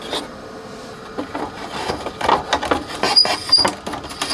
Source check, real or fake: real